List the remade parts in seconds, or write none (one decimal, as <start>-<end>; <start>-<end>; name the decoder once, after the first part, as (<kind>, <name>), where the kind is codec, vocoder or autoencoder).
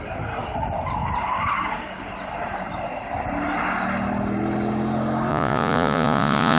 5.3-6.6 (vocoder, Vocos)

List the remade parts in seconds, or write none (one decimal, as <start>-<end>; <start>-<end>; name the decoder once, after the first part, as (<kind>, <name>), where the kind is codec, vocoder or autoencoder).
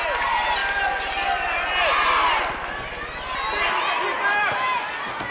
none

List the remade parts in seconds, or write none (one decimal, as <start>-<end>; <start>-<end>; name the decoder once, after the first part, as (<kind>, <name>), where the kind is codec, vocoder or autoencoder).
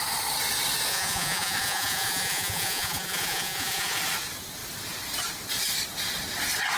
0.9-4.0 (vocoder, Vocos)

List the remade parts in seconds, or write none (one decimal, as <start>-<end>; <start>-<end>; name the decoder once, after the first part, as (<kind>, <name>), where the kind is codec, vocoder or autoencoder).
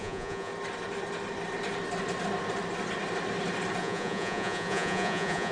0.0-0.5 (vocoder, Vocos); 3.8-5.5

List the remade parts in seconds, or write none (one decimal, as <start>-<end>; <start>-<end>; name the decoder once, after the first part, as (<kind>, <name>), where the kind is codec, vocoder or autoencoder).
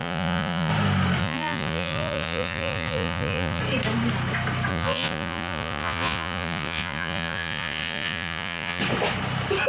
0.0-0.7 (vocoder, Vocos); 1.2-3.6; 4.7-8.8